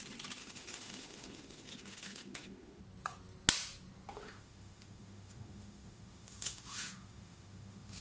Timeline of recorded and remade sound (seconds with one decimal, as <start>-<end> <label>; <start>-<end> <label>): 0.0-0.4 recorded; 0.4-2.8 remade; 2.8-4.1 recorded; 4.1-8.0 remade